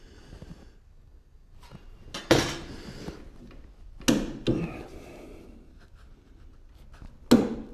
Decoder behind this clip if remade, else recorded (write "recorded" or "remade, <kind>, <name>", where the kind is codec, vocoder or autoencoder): recorded